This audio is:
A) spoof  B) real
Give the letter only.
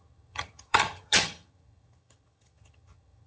A